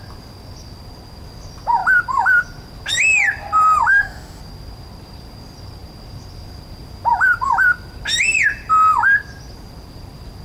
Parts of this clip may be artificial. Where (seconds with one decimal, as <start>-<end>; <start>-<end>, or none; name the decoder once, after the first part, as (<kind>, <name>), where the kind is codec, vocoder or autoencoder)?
3.9-4.4 (autoencoder, DAC-VAE)